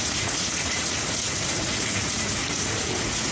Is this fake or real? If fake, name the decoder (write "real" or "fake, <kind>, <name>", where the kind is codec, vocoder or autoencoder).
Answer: fake, vocoder, Vocos